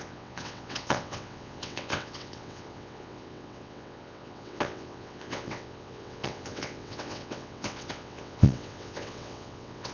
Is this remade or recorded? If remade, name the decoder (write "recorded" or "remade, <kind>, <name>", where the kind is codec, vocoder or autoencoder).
remade, vocoder, WaveNeXt